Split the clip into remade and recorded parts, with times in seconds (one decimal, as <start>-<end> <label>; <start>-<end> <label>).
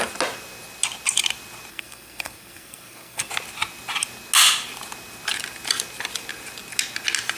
0.0-1.7 recorded; 1.7-3.3 remade; 3.3-7.4 recorded